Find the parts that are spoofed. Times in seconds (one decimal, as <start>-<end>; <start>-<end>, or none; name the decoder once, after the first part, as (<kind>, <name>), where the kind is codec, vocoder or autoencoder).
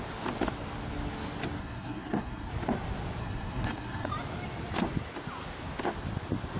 1.6-2.5 (codec, SNAC); 3.2-4.1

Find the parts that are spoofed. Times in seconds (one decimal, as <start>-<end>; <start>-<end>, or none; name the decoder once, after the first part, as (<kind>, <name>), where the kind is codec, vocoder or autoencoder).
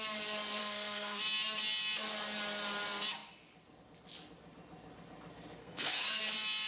0.6-1.2 (codec, SNAC); 5.6-6.2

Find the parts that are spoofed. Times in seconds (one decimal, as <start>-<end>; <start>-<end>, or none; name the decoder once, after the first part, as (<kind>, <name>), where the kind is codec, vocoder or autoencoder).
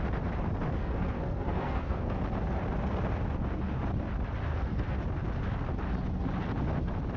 0.8-2.2 (codec, SNAC); 4.5-5.0